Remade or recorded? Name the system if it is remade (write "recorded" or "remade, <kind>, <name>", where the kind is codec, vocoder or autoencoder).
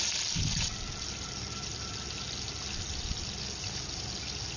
recorded